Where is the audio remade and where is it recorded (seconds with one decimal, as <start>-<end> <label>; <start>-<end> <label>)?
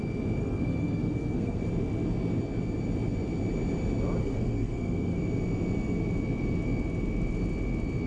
0.0-0.4 recorded; 0.4-1.6 remade; 1.6-4.2 recorded; 4.2-5.2 remade; 5.2-8.1 recorded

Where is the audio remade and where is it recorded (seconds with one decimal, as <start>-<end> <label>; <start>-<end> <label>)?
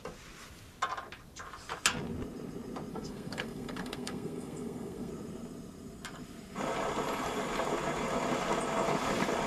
0.0-2.9 recorded; 2.9-5.1 remade; 5.1-9.5 recorded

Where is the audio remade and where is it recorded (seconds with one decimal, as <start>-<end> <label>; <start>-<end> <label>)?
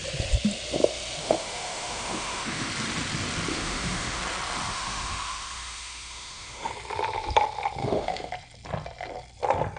0.0-1.2 recorded; 1.2-2.7 remade; 2.7-3.5 recorded; 3.5-4.2 remade; 4.2-4.7 recorded; 4.7-6.7 remade; 6.7-7.8 recorded; 7.8-8.3 remade; 8.3-9.8 recorded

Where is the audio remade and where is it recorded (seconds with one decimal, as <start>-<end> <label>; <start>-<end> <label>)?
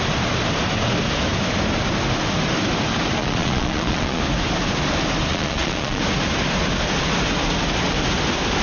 0.0-3.2 recorded; 3.2-4.2 remade; 4.2-5.3 recorded; 5.3-6.0 remade; 6.0-8.6 recorded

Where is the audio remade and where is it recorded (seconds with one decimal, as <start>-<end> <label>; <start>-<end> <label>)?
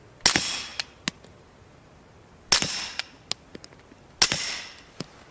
0.0-5.3 recorded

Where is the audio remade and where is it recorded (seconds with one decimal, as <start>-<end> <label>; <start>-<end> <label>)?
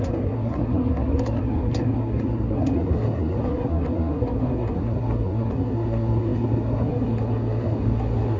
0.0-8.4 remade